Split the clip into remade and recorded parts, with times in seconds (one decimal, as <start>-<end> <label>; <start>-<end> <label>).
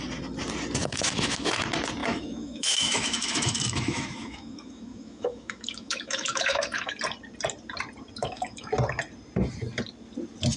0.0-0.8 recorded; 0.8-1.6 remade; 1.6-2.0 recorded; 2.0-6.9 remade; 6.9-8.2 recorded; 8.2-8.7 remade; 8.7-10.6 recorded